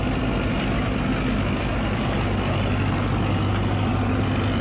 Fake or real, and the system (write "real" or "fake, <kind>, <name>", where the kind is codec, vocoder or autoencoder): real